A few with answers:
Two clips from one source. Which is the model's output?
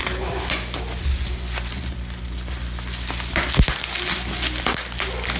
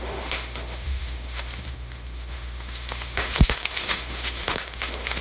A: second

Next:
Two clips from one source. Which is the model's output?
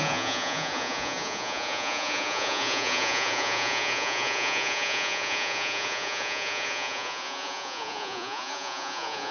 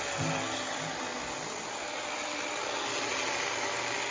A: first